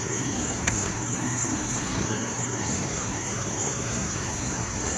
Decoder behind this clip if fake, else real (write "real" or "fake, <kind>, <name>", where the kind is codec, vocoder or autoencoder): fake, codec, SNAC